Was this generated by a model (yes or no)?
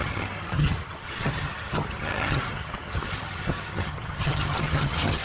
yes